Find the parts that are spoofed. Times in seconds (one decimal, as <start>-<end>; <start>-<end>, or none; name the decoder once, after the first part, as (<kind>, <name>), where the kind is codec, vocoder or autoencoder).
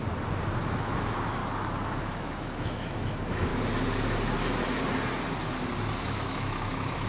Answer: 0.6-1.4 (autoencoder, DAC-VAE); 2.0-3.5; 5.9-7.1